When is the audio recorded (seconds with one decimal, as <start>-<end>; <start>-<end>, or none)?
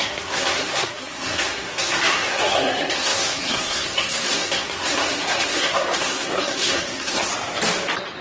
7.3-8.2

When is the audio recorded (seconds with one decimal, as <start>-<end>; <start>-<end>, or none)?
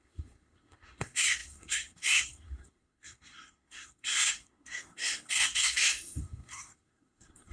none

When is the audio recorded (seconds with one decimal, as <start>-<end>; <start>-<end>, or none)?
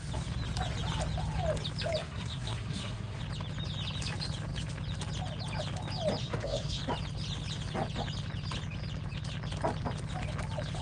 0.0-2.0; 3.2-6.2; 6.8-10.8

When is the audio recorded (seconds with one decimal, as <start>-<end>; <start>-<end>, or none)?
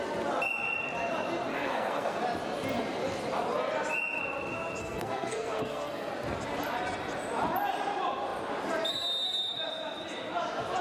0.0-1.5; 2.2-4.8; 6.1-10.8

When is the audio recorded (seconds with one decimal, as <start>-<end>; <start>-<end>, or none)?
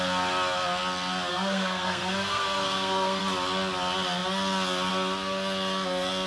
0.0-1.3; 3.2-6.3